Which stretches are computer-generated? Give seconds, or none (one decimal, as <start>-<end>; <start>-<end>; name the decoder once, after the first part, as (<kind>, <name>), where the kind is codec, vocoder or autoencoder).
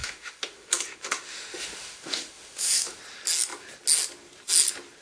0.0-3.0 (autoencoder, DAC-VAE)